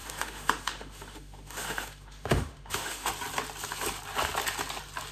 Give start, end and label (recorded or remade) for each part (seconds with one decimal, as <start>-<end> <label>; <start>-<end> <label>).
0.0-3.1 remade; 3.1-5.1 recorded